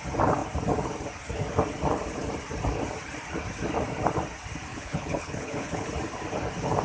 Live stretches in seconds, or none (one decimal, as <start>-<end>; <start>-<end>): 0.0-4.7; 5.9-6.8